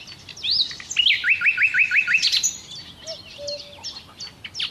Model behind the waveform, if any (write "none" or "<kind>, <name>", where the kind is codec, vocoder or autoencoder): none